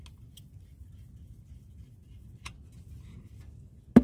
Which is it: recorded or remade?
recorded